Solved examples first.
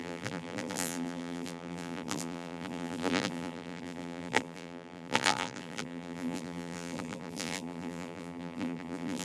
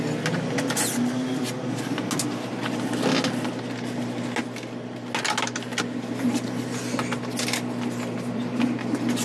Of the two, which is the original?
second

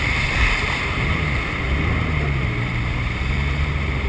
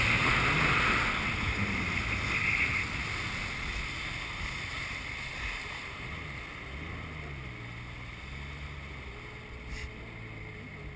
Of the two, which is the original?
second